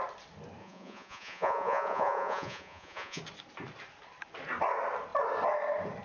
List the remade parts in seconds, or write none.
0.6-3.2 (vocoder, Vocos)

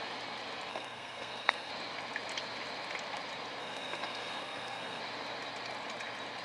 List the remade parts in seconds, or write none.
0.7-1.7 (codec, SNAC); 3.6-5.0

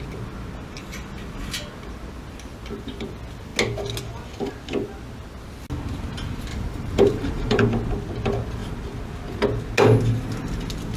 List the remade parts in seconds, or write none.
6.5-7.6 (vocoder, BigVGAN v2)

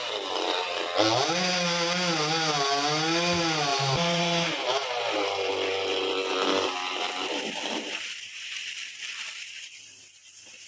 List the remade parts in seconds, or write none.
3.7-5.5 (vocoder, BigVGAN v2)

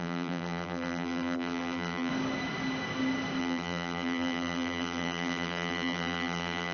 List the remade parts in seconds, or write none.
0.0-2.1 (vocoder, BigVGAN v2); 3.4-6.7

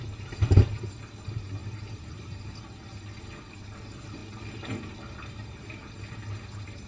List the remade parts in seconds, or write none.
none